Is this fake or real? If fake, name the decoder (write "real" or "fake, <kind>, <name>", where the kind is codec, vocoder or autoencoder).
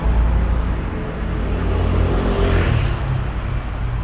real